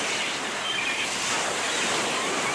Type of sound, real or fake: real